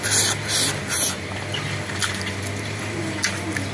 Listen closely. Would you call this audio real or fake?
real